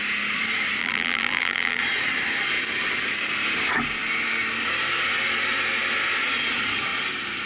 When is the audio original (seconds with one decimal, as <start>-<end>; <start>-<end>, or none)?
0.0-0.8; 1.8-7.5